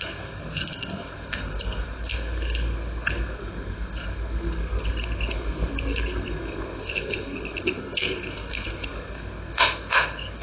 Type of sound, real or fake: fake